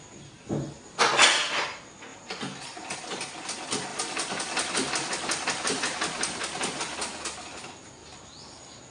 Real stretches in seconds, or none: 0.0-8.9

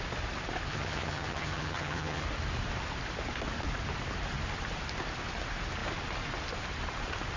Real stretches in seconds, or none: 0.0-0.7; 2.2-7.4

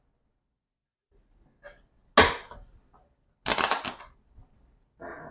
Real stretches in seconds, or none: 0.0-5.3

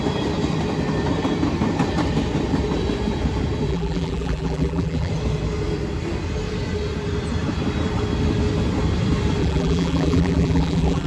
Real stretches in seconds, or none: 0.0-3.7; 5.1-9.4